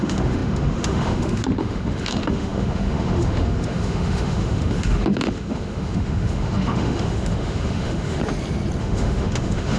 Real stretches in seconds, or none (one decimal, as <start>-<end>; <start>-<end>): 8.2-8.8